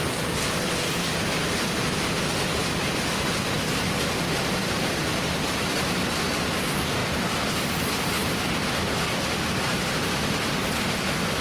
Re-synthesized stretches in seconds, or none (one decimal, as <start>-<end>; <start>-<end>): none